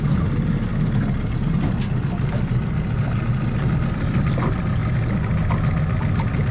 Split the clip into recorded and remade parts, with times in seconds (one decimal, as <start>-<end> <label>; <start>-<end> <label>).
0.0-6.5 recorded